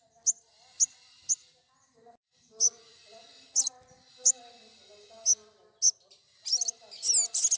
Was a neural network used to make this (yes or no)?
no